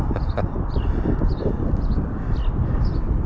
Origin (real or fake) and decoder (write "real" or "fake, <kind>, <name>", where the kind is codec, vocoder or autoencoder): real